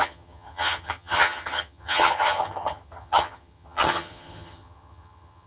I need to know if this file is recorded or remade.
remade